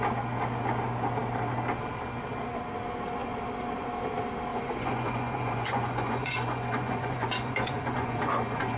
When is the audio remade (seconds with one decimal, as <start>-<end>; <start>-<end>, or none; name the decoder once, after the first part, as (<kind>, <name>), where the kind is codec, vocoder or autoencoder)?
4.5-8.8 (vocoder, Vocos)